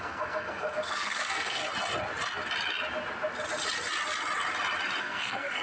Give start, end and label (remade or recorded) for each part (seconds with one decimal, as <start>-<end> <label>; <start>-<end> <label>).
0.0-1.6 remade; 1.6-5.0 recorded; 5.0-5.6 remade